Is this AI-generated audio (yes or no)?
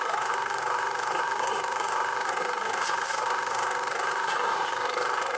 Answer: yes